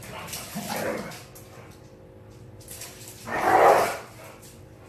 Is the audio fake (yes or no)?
no